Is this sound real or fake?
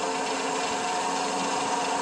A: real